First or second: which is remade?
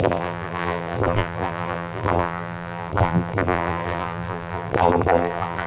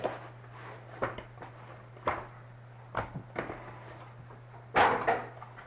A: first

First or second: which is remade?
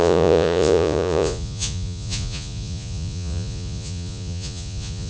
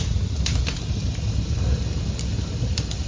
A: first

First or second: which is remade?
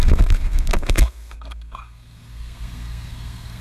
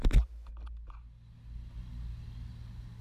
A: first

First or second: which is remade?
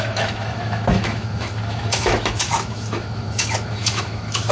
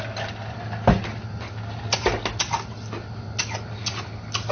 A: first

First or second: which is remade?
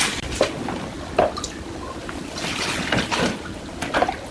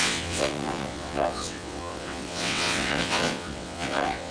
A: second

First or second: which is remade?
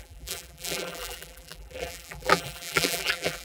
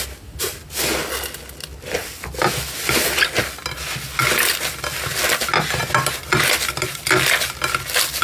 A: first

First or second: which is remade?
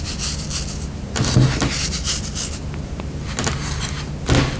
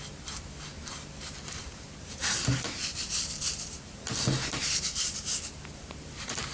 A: second